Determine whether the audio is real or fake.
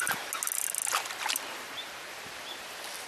real